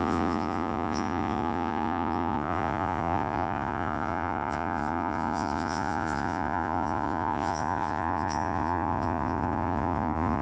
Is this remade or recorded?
remade